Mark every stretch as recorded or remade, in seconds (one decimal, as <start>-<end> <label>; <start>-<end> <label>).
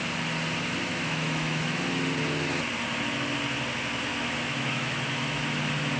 0.0-0.9 recorded; 0.9-1.8 remade; 1.8-4.1 recorded; 4.1-5.4 remade; 5.4-6.0 recorded